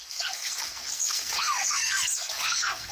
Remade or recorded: remade